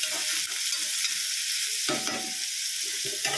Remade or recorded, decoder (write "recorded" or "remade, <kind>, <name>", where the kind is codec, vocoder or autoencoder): recorded